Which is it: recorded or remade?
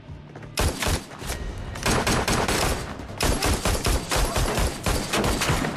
recorded